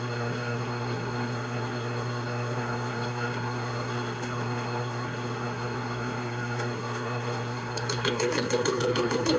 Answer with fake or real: fake